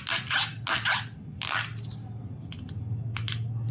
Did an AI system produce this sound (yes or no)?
no